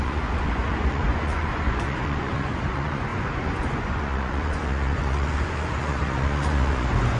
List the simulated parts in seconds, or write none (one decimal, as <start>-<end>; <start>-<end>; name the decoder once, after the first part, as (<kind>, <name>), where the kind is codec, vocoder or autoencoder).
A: 0.0-7.2 (vocoder, Vocos)